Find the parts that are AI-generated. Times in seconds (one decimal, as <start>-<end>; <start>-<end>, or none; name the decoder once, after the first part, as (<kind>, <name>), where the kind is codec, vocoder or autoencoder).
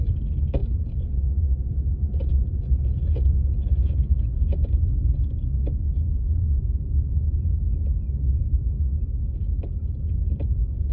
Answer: none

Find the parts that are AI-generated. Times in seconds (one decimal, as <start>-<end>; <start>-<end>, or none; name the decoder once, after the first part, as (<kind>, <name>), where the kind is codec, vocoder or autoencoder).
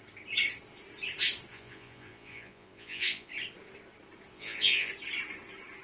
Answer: 1.5-3.3 (vocoder, Vocos); 4.3-4.9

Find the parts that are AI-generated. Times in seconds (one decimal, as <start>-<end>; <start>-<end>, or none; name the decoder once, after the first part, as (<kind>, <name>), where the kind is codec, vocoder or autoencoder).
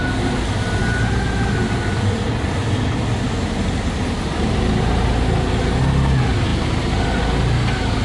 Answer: none